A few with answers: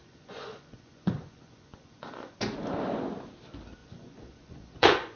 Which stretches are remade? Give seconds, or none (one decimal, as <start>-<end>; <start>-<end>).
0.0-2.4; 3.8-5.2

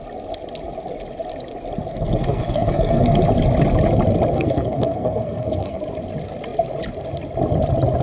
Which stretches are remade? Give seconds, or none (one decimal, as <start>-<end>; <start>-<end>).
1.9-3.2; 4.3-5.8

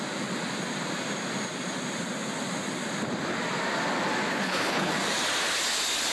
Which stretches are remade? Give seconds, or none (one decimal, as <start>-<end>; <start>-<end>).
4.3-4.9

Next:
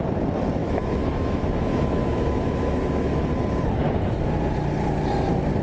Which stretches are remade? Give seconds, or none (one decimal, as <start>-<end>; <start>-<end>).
0.6-3.2

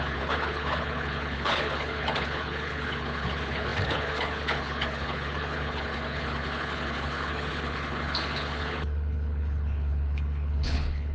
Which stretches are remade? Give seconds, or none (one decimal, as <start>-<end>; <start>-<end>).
0.0-11.1